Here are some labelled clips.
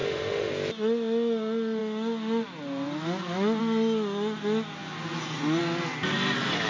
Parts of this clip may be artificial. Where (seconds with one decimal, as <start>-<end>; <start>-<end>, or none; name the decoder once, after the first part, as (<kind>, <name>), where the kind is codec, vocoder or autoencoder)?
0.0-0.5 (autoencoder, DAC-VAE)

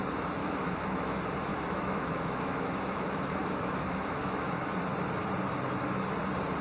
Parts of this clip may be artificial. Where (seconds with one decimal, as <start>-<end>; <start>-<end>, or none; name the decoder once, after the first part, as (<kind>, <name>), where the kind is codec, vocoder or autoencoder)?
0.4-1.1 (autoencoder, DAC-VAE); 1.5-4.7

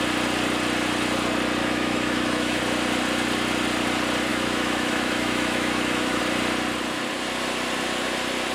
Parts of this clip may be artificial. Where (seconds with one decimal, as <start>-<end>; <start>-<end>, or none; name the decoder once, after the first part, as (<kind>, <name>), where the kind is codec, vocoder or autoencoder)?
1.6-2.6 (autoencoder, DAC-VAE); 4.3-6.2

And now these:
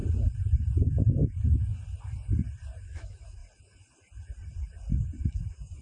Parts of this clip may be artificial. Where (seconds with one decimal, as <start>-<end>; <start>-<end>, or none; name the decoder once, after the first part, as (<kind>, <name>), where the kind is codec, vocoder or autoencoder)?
2.8-3.4 (autoencoder, DAC-VAE); 5.3-5.8

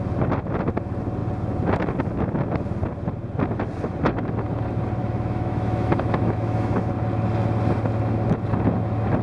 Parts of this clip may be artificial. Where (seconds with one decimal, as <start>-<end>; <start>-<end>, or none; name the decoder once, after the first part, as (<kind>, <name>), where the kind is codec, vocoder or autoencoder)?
5.0-6.9 (autoencoder, DAC-VAE)